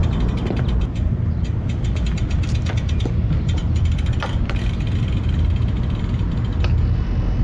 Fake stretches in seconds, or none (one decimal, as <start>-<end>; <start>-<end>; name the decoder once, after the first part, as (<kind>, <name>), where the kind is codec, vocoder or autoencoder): none